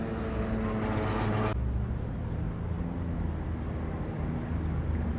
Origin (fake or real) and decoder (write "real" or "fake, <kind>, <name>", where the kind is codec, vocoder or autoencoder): real